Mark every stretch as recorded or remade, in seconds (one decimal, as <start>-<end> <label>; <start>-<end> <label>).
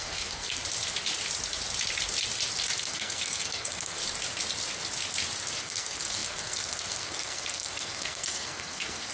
0.0-0.6 remade; 0.6-2.8 recorded; 2.8-4.0 remade; 4.0-5.6 recorded; 5.6-9.1 remade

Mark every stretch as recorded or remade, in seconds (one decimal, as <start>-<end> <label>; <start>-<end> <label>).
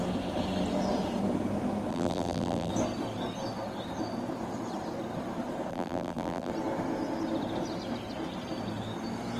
0.0-1.9 recorded; 1.9-2.7 remade; 2.7-5.7 recorded; 5.7-6.5 remade; 6.5-9.4 recorded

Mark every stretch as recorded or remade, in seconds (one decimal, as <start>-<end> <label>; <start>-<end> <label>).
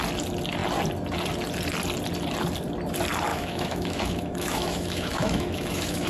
0.0-3.3 recorded; 3.3-6.1 remade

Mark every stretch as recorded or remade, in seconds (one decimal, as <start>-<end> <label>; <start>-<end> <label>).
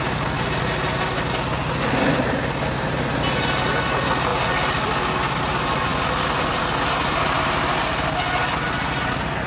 0.0-9.5 recorded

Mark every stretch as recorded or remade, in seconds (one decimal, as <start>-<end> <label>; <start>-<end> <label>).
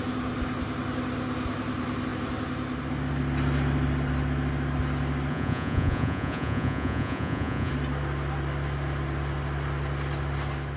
0.0-5.3 recorded; 5.3-7.7 remade; 7.7-10.8 recorded